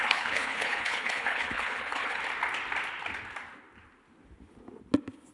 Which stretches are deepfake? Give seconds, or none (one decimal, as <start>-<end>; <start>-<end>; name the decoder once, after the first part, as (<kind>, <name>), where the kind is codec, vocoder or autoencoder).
0.0-2.2 (codec, HILCodec)